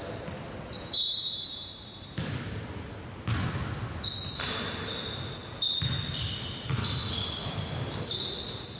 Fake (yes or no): no